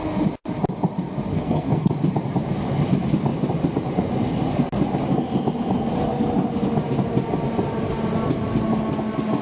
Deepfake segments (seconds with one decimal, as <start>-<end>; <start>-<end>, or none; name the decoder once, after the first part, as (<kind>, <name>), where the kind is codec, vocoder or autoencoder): 1.3-1.9 (codec, SNAC)